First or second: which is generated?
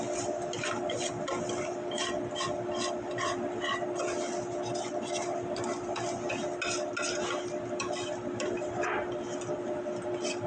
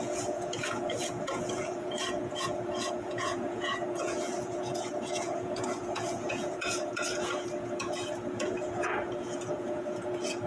second